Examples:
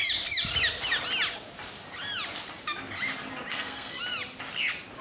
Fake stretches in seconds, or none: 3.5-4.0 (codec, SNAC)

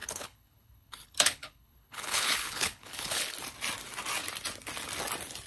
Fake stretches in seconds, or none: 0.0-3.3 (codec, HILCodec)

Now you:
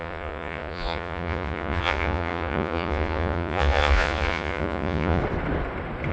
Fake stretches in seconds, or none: 0.0-5.2 (vocoder, Vocos)

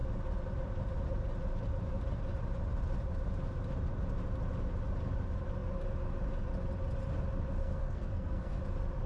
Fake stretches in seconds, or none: 7.6-8.6 (codec, SNAC)

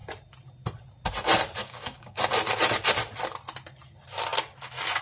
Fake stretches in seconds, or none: 1.6-2.2 (codec, DAC)